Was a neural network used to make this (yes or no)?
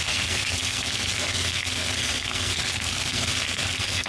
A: yes